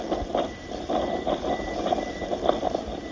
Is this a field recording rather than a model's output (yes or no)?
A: no